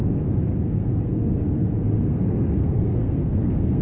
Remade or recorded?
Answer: remade